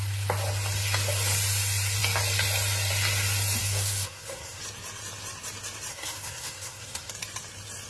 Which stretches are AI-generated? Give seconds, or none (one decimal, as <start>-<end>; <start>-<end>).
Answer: 3.6-4.6; 5.9-7.1